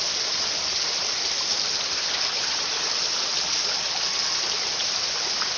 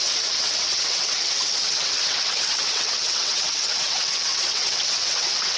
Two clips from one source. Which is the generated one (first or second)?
second